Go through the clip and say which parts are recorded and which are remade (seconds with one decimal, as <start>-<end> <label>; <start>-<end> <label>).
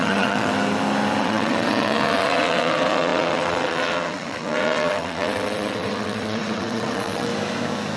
0.0-0.5 remade; 0.5-1.2 recorded; 1.2-7.3 remade; 7.3-8.0 recorded